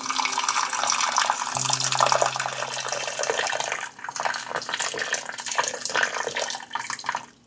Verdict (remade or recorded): remade